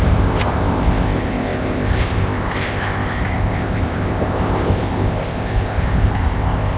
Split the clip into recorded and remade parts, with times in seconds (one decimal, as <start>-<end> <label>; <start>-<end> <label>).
0.0-6.8 remade